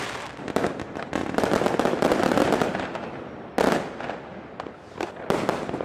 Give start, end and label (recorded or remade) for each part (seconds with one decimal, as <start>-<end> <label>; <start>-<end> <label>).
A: 0.0-5.8 recorded